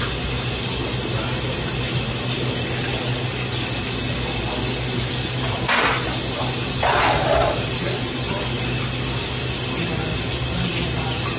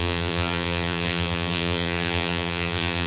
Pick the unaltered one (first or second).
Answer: first